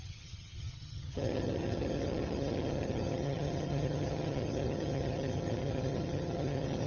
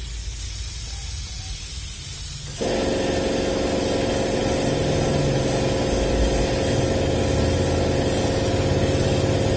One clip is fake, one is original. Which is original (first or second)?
second